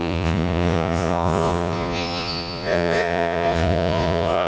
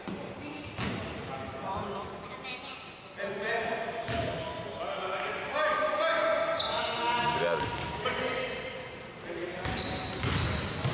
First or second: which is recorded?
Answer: second